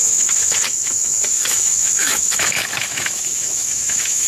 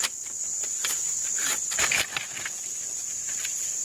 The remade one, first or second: first